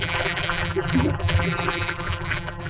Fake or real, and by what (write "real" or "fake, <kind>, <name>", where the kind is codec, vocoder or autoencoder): fake, vocoder, BigVGAN v2